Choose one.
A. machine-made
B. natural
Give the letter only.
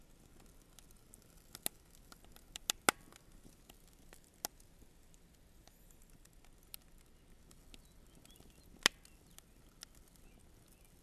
B